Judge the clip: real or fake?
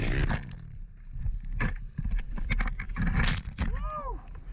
real